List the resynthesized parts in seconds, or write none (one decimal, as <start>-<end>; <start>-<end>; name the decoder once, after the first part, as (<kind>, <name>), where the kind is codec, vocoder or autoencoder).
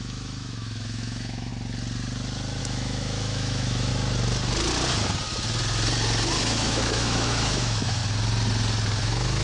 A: 0.0-1.5 (autoencoder, DAC-VAE); 2.6-3.9; 6.4-8.0; 9.0-9.4